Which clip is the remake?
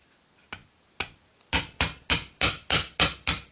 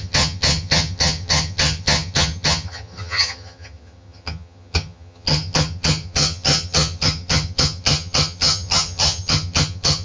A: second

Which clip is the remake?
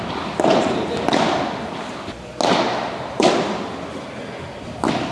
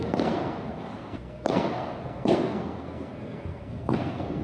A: second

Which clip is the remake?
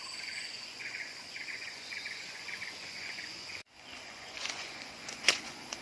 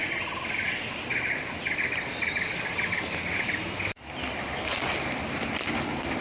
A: first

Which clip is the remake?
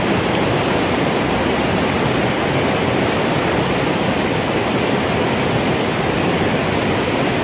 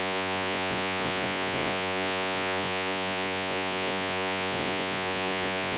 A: second